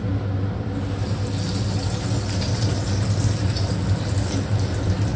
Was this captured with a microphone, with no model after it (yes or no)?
yes